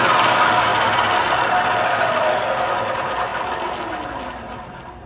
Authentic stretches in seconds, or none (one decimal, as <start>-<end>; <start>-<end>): 0.0-5.1